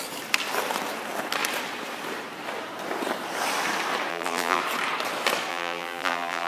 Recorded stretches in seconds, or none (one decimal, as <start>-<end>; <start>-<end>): 0.0-4.1; 4.6-5.5